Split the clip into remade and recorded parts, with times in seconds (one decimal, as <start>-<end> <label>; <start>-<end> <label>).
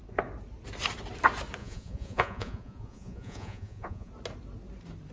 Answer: 0.0-1.6 recorded; 1.6-4.1 remade; 4.1-5.1 recorded